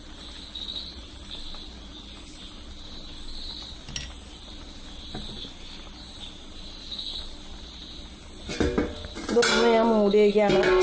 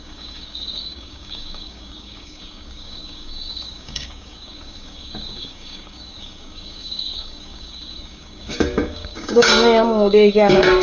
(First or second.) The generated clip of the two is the second